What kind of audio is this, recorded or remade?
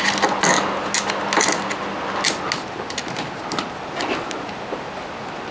recorded